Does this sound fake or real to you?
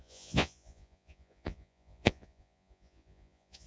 fake